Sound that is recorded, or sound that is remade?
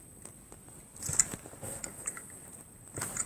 recorded